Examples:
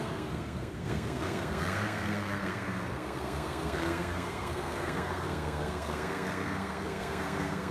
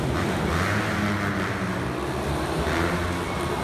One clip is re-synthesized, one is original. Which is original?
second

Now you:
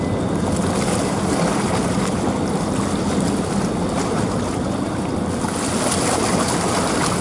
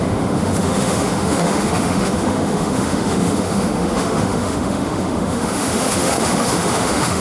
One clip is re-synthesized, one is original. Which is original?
first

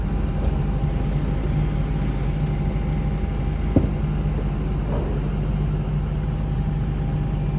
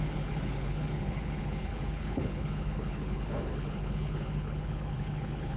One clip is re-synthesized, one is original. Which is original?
first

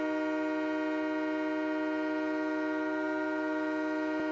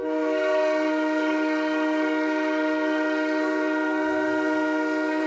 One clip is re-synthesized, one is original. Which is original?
first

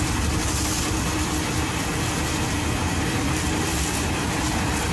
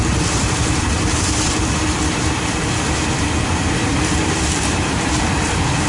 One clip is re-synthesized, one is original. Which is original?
first